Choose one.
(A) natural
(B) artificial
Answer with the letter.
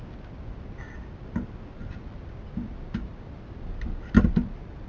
A